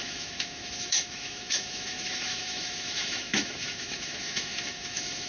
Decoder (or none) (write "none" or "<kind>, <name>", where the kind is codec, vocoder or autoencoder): autoencoder, DAC-VAE